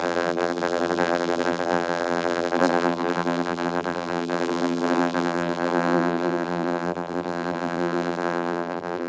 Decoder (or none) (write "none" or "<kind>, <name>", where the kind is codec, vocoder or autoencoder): vocoder, BigVGAN v2